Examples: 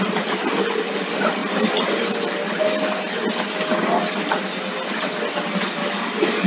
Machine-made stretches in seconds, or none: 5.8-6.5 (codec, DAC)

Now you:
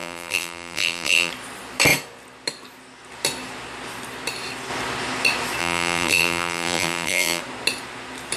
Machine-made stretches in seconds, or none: 0.0-1.3 (vocoder, BigVGAN v2); 5.6-7.4